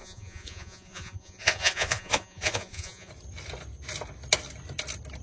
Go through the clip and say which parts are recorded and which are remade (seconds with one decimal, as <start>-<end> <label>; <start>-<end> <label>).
0.0-3.1 remade; 3.1-5.2 recorded